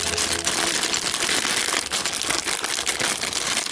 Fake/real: real